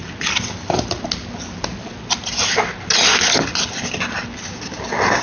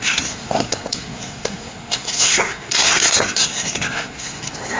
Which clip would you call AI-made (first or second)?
second